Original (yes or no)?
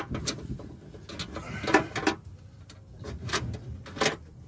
yes